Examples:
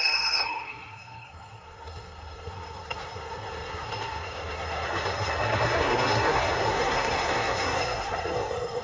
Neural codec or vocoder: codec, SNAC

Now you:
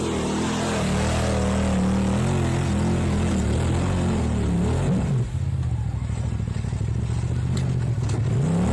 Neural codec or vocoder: none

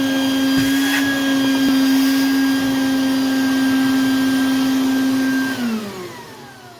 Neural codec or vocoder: none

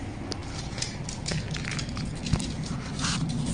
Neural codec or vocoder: none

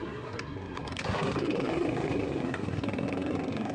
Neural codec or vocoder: codec, SNAC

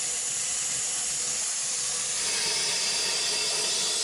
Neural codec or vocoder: none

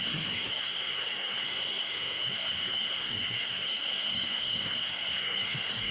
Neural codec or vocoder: codec, SNAC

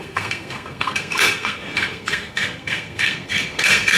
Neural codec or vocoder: codec, SNAC